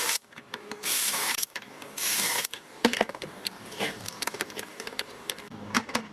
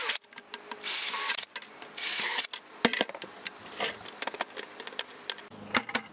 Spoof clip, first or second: first